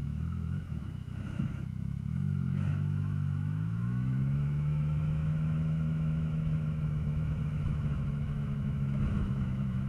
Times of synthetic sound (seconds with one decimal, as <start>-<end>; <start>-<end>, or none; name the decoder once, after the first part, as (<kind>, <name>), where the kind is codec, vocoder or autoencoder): 0.0-9.9 (autoencoder, DAC-VAE)